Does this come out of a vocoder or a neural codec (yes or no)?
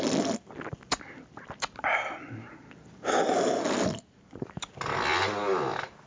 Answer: no